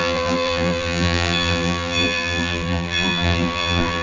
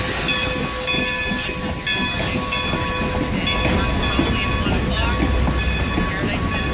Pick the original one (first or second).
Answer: second